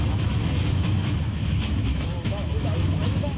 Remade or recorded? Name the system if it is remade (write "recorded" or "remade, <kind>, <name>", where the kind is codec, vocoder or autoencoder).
remade, autoencoder, DAC-VAE